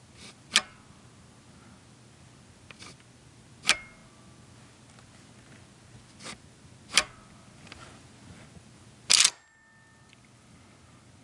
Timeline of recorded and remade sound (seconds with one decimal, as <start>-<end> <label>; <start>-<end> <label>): 0.0-11.2 recorded